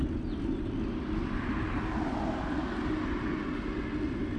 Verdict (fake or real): real